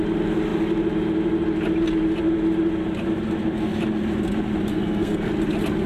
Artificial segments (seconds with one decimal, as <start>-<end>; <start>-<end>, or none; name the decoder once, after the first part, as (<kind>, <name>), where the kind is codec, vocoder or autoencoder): 4.7-5.3 (codec, SNAC)